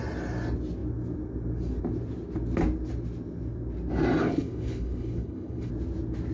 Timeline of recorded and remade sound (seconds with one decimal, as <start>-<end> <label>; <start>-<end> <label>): 0.0-4.2 recorded; 4.2-5.7 remade; 5.7-6.3 recorded